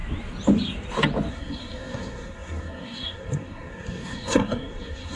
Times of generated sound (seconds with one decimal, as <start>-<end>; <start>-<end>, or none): 1.3-5.2